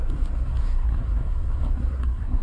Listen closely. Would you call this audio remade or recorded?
remade